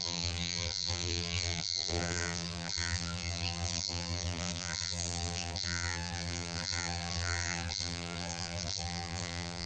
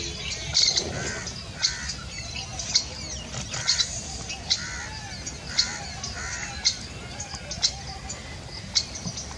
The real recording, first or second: second